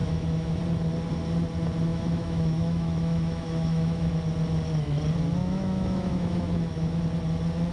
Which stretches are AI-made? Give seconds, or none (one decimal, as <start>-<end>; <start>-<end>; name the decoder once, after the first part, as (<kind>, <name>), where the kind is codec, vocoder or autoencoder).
0.0-0.6 (autoencoder, DAC-VAE); 1.9-4.1; 5.4-7.0